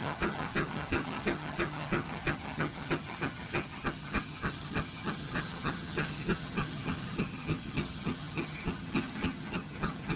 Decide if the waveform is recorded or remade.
remade